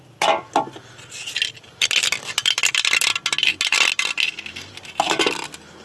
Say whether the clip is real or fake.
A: real